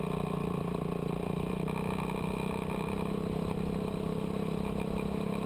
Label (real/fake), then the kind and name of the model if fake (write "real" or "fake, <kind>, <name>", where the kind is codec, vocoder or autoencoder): real